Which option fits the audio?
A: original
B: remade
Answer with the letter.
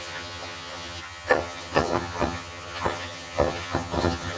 B